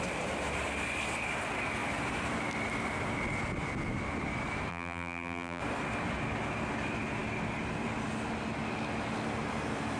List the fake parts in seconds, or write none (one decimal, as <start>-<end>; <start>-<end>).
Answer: 4.7-5.6

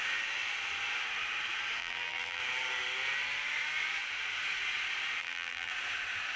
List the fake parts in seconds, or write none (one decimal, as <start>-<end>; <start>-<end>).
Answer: 1.8-2.4; 5.2-5.7

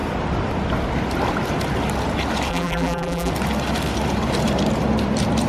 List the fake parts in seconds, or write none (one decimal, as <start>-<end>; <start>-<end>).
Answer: 2.5-3.3

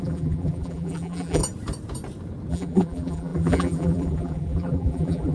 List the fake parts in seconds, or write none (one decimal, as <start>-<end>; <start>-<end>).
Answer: 0.0-1.4; 2.5-5.3